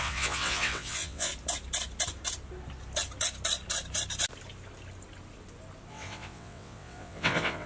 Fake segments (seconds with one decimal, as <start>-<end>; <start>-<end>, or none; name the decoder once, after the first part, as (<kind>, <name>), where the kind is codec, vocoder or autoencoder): 0.0-1.3 (vocoder, WaveNeXt); 5.9-7.7